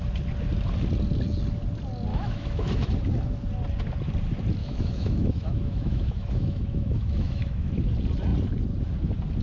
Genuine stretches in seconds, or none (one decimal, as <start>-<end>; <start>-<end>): 0.0-2.1; 2.9-4.6; 7.7-9.4